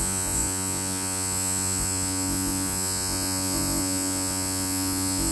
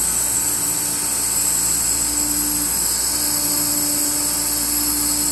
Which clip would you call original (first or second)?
second